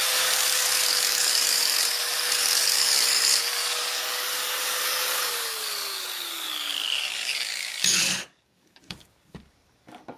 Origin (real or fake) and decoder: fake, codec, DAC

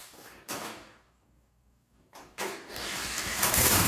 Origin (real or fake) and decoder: fake, codec, DAC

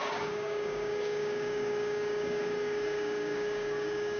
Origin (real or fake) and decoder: fake, codec, DAC